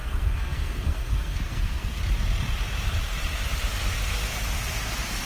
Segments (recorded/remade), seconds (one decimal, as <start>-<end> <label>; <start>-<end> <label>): 0.0-2.0 remade; 2.0-5.2 recorded